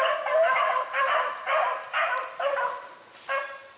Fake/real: real